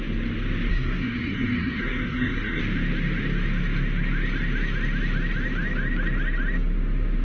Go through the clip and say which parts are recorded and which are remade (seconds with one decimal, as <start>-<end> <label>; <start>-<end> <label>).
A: 0.0-0.7 recorded; 0.7-2.6 remade; 2.6-7.2 recorded